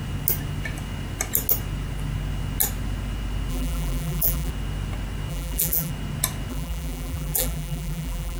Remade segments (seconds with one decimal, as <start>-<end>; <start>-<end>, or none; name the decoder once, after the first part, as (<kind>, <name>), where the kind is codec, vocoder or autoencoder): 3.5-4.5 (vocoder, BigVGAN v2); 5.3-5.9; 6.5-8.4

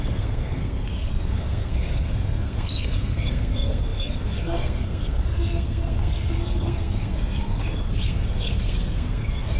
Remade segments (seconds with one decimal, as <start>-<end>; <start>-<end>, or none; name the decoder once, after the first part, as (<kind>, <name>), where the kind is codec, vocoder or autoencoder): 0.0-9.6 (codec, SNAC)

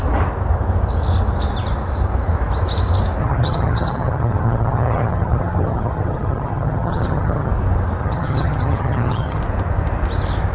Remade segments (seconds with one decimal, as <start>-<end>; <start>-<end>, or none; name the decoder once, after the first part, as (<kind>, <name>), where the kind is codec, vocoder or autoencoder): 3.2-7.5 (vocoder, HiFi-GAN); 8.0-9.4